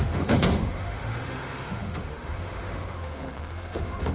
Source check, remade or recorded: remade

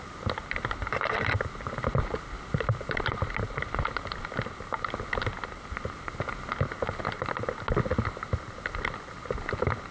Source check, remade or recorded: recorded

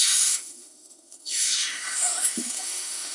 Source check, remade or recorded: remade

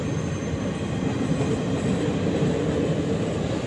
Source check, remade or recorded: recorded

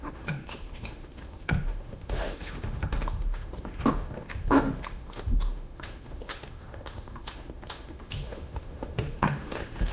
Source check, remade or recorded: remade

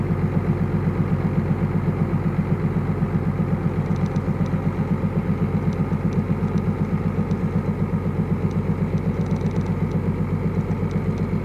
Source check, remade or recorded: recorded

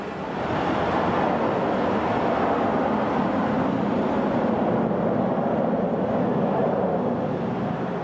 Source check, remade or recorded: recorded